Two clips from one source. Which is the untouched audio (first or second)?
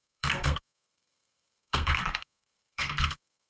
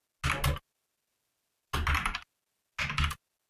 second